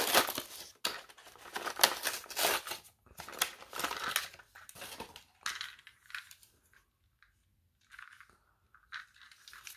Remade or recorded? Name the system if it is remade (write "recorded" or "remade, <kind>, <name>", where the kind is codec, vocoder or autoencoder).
recorded